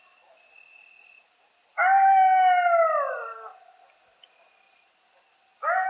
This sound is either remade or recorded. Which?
recorded